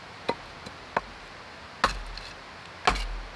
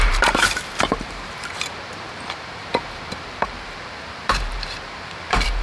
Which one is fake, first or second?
second